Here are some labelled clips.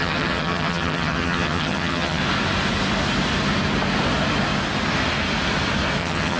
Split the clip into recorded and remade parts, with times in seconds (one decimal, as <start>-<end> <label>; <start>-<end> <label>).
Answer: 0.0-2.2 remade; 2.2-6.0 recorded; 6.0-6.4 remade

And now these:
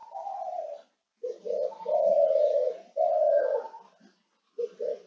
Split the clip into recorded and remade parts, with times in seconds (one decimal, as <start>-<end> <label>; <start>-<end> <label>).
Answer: 0.0-5.1 recorded

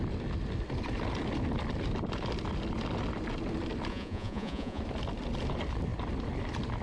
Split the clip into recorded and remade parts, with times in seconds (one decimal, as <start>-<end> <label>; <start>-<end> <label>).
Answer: 0.0-3.9 recorded; 3.9-4.8 remade; 4.8-6.8 recorded